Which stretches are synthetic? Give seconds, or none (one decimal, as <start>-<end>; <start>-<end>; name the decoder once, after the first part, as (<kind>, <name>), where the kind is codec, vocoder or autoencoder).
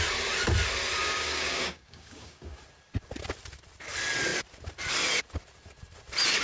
1.0-2.6 (codec, DAC)